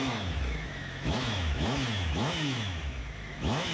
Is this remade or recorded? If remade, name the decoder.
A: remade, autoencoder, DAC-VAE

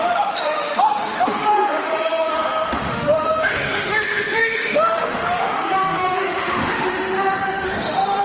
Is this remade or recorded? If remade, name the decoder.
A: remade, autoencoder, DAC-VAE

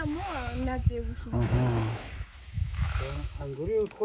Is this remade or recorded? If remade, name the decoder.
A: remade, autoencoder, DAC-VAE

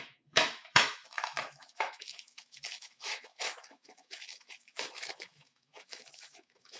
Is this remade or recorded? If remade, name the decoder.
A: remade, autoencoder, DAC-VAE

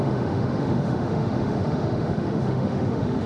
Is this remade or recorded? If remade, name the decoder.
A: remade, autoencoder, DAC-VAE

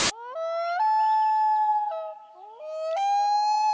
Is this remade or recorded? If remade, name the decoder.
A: recorded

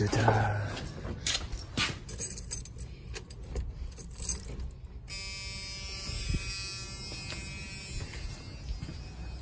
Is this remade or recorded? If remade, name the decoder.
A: recorded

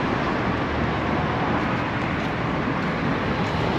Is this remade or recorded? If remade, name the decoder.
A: recorded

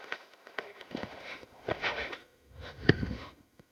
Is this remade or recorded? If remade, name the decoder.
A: remade, autoencoder, DAC-VAE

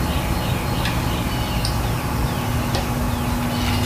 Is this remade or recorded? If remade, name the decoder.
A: recorded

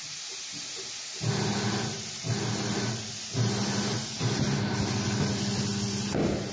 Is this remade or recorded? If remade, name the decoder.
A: recorded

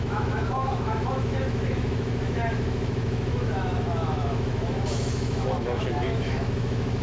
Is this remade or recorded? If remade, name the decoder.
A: remade, autoencoder, DAC-VAE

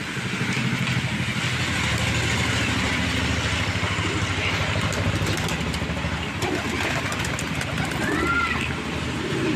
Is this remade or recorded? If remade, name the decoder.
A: recorded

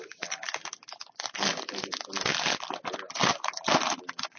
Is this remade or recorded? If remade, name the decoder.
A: recorded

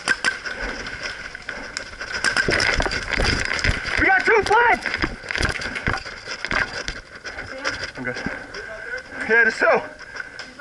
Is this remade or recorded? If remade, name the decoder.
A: recorded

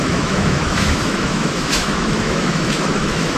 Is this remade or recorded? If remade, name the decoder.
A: remade, autoencoder, DAC-VAE